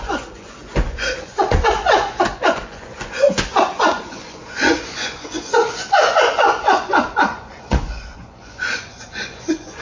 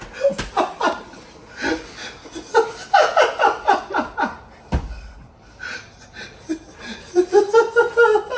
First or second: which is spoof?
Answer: first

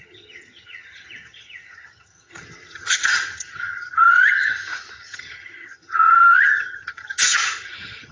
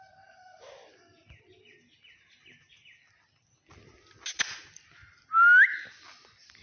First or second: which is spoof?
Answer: first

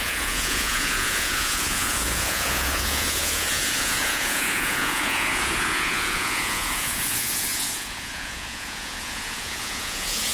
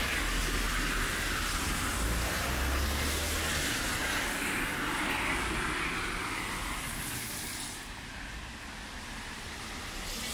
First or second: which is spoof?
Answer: first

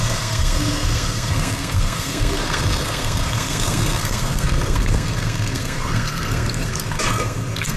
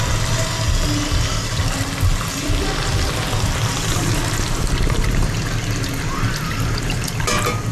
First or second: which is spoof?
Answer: first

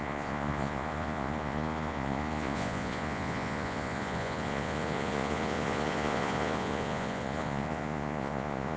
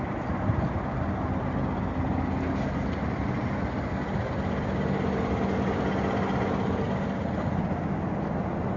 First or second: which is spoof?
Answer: first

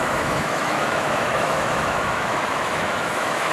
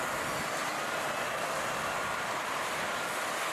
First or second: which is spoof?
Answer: first